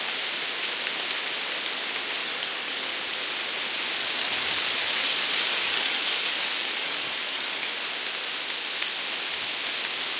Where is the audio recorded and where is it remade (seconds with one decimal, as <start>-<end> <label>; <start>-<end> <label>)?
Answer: 0.0-2.2 recorded; 2.2-2.9 remade; 2.9-4.0 recorded; 4.0-7.7 remade; 7.7-10.2 recorded